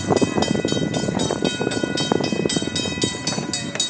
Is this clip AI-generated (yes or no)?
no